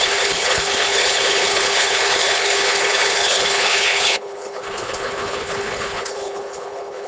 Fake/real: fake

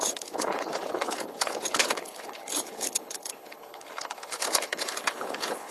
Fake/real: fake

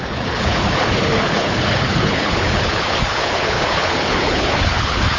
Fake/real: fake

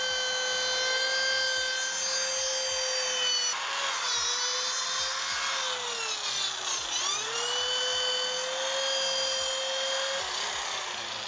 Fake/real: real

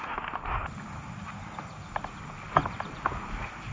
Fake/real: real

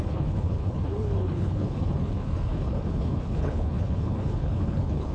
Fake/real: fake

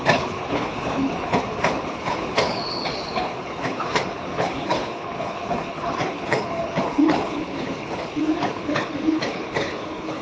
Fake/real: fake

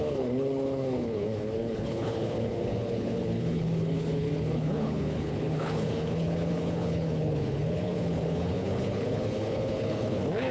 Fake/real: fake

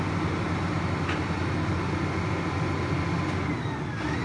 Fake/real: real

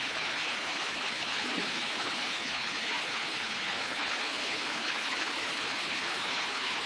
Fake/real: fake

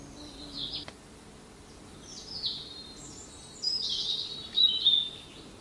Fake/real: real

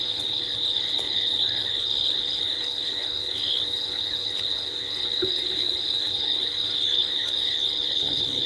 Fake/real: fake